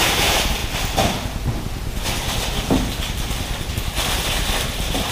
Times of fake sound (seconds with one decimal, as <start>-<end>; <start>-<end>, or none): 0.0-0.6; 3.7-5.1

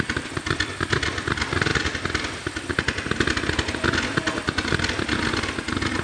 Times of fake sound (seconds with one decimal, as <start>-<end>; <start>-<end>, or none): none

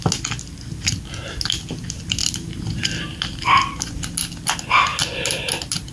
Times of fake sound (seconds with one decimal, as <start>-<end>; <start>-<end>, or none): 2.2-3.9; 4.9-5.9

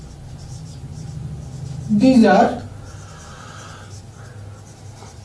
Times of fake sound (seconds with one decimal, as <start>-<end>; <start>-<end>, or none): none

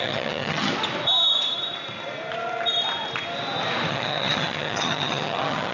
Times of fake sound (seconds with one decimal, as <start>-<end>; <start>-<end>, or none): 0.0-0.7; 3.9-5.7

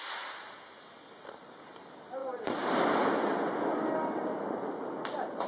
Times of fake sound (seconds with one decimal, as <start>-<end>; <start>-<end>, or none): none